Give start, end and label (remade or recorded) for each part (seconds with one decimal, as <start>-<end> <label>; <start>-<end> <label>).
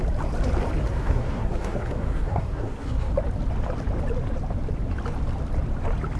0.0-0.8 recorded; 0.8-3.1 remade; 3.1-6.2 recorded